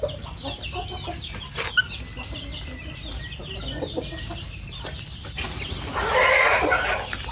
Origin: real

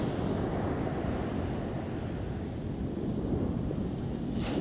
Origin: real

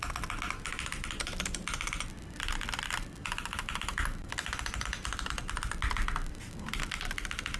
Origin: real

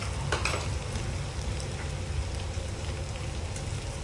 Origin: real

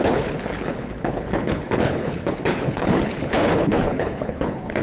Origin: fake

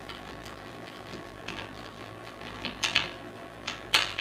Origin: fake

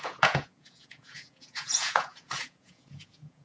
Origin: fake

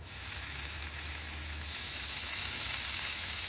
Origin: fake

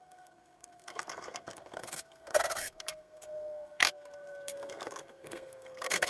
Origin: fake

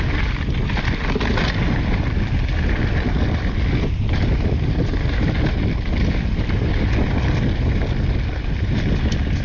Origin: real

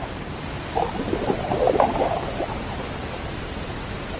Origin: real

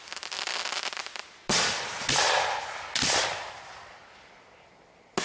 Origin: real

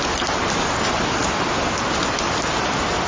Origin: real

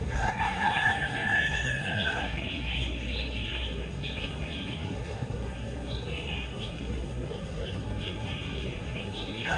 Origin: fake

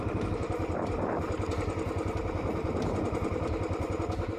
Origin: fake